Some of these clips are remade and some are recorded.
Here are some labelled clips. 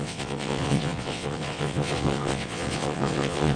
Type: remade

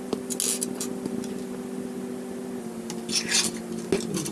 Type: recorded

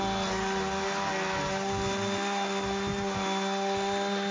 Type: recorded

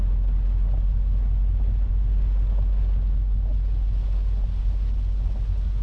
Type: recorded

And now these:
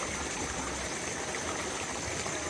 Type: recorded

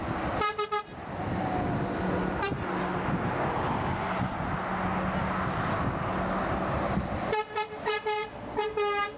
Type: recorded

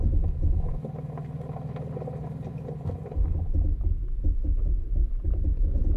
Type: recorded